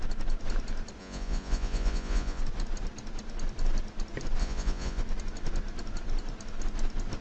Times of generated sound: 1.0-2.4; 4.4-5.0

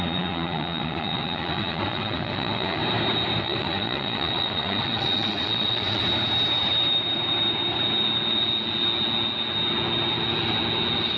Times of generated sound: 0.0-2.8; 3.4-6.0

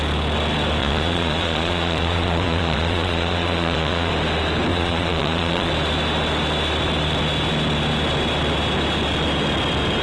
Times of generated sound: 0.8-4.1; 4.7-5.7

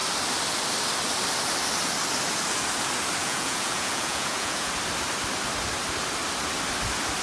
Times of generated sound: 3.2-4.7

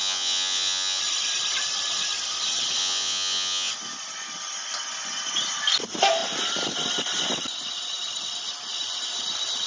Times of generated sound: 0.0-1.0; 2.8-3.7

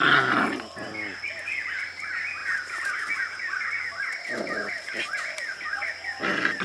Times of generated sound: none